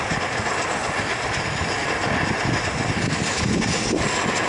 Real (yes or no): yes